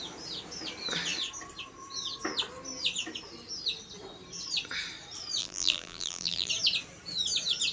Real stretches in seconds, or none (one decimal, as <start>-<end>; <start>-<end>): 0.0-5.4; 6.5-7.7